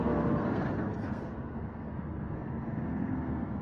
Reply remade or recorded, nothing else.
remade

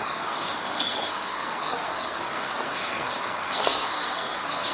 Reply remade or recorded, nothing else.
remade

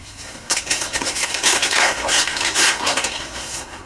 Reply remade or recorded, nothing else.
remade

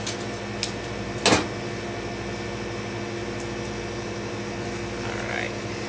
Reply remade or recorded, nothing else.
recorded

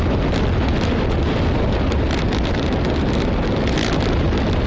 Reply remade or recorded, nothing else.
recorded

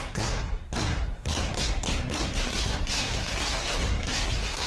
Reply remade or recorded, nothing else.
remade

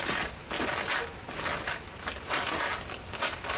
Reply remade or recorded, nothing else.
recorded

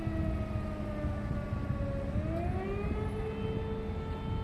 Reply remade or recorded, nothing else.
recorded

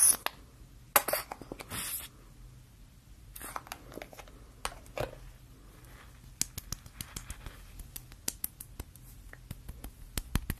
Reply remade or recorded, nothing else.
recorded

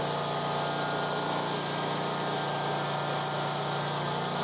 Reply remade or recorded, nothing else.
recorded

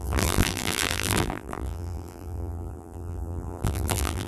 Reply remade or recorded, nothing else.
remade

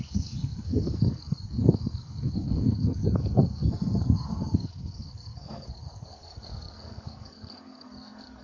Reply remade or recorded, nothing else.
remade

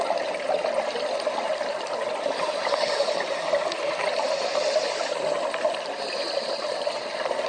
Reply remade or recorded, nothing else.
recorded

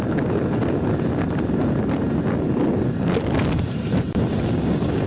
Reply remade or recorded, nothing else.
recorded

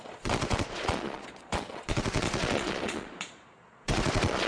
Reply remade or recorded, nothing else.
remade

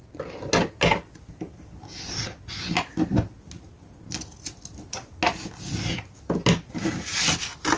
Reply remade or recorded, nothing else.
recorded